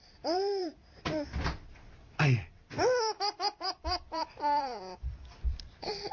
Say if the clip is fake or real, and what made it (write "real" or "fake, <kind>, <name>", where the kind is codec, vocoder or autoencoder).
fake, vocoder, BigVGAN v2